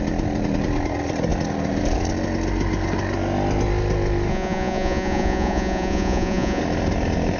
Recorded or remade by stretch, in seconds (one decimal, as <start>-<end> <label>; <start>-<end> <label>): 0.0-4.3 recorded; 4.3-6.6 remade; 6.6-7.4 recorded